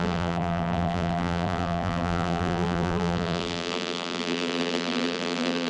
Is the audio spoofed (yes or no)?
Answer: yes